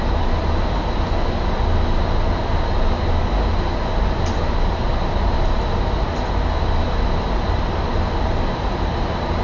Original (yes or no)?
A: yes